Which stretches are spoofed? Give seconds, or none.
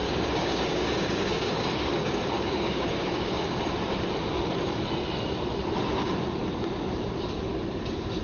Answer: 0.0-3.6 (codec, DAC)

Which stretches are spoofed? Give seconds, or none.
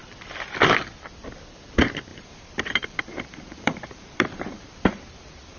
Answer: 2.1-5.6 (vocoder, BigVGAN v2)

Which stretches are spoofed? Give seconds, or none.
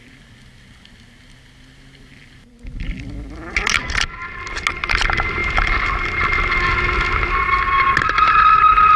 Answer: none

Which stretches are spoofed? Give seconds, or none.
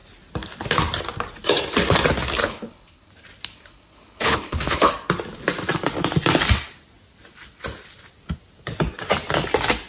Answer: 2.4-3.1 (codec, HILCodec); 3.5-4.9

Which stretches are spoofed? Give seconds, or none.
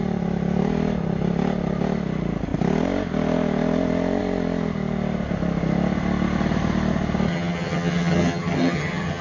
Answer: 7.3-9.2 (vocoder, HiFi-GAN)